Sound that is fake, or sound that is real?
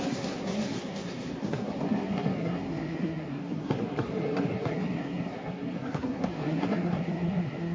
fake